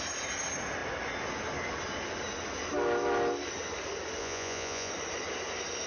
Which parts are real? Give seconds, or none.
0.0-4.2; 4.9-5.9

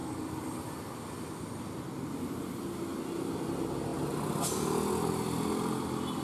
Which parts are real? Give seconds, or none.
0.0-6.2